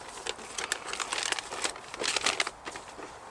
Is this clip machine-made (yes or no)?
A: no